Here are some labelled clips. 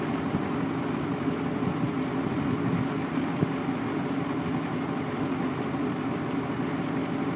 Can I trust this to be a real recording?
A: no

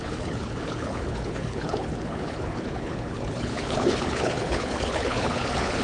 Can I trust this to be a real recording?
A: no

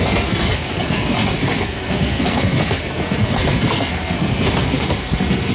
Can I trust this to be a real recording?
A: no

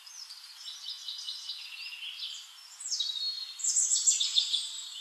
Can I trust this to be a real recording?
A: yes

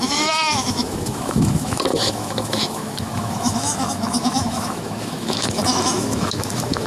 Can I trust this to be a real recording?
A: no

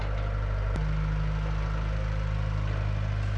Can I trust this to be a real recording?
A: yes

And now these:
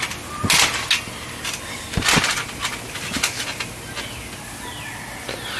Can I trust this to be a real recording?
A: yes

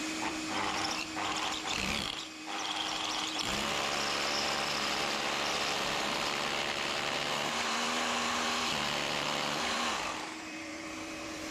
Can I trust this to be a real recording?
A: no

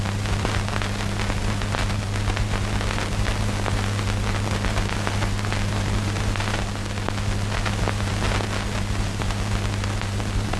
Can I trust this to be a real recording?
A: yes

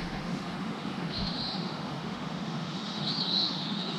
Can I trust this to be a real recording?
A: no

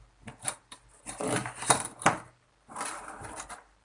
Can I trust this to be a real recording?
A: no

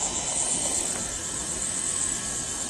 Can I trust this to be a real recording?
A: yes